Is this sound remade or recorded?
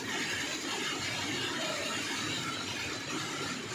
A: recorded